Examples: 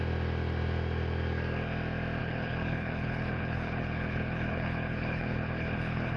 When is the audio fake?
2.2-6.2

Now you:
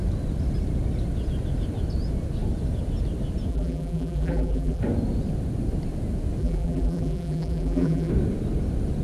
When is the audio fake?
3.5-4.8; 6.4-8.1

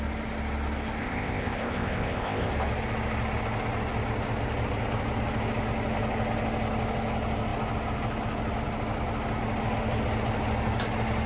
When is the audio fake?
1.0-2.5